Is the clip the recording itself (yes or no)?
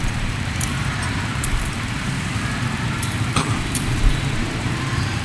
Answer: no